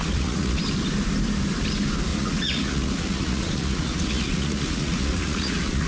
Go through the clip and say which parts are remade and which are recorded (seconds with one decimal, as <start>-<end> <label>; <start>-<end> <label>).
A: 0.0-0.6 remade; 0.6-2.1 recorded; 2.1-5.9 remade